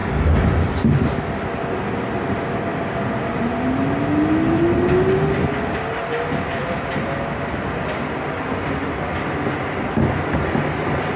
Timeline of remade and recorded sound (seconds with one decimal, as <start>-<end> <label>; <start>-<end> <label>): 0.0-11.2 recorded